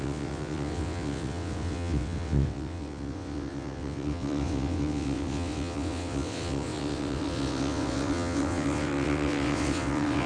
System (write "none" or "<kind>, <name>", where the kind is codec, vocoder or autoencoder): vocoder, WaveNeXt